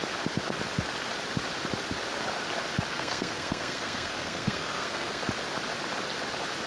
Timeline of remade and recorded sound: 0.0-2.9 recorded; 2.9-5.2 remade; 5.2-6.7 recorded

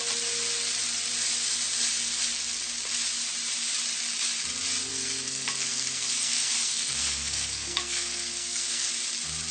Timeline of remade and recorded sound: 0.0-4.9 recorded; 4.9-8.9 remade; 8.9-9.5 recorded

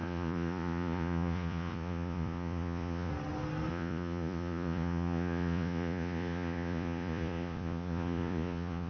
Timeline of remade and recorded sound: 0.0-3.1 remade; 3.1-3.7 recorded; 3.7-8.9 remade